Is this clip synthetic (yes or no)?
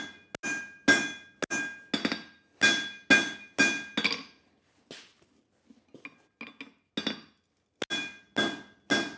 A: no